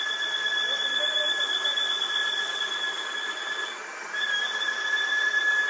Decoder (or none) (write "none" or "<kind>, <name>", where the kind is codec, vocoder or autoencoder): none